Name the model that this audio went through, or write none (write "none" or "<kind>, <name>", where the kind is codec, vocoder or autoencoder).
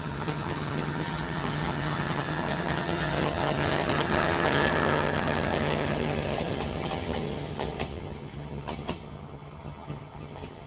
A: vocoder, HiFi-GAN